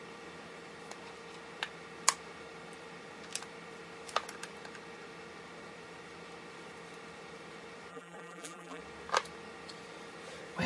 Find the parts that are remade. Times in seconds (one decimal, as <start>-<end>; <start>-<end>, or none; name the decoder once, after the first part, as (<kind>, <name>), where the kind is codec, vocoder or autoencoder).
7.9-8.8 (vocoder, BigVGAN v2)